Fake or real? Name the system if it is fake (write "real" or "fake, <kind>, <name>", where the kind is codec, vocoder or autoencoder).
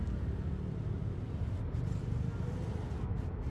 real